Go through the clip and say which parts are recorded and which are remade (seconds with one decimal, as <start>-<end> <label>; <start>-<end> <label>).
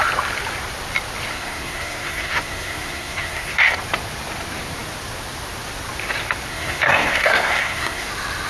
0.0-1.3 recorded; 1.3-3.8 remade; 3.8-6.5 recorded; 6.5-8.1 remade; 8.1-8.5 recorded